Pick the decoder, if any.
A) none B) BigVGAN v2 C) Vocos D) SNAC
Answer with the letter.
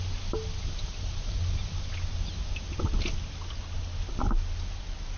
A